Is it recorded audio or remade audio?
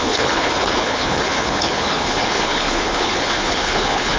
remade